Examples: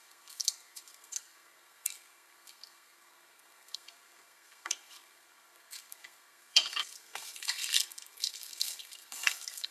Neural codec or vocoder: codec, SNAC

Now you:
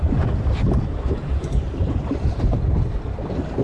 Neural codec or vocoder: vocoder, BigVGAN v2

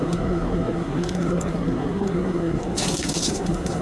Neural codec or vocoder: codec, SNAC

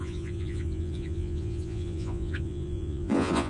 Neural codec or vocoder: vocoder, Vocos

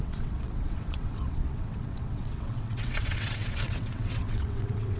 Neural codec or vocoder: vocoder, WaveNeXt